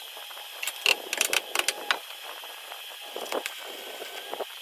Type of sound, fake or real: real